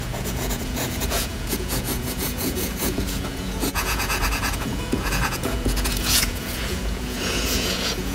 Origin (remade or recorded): remade